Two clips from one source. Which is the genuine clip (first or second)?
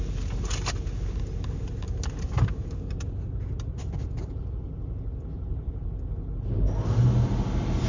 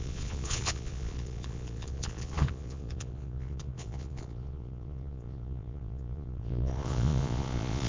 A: first